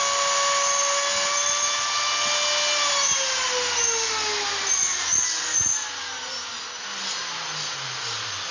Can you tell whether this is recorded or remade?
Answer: recorded